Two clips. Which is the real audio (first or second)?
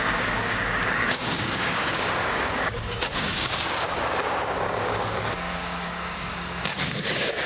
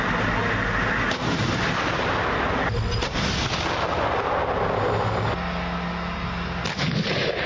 second